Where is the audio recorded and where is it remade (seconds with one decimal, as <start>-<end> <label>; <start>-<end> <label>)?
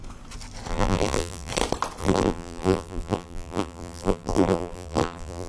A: 0.0-0.7 recorded; 0.7-1.5 remade; 1.5-2.0 recorded; 2.0-5.5 remade